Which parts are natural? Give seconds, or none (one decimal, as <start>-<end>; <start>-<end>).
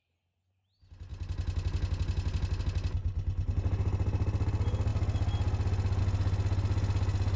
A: 0.0-7.4